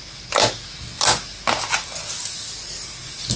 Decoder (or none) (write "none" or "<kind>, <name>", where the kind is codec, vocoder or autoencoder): none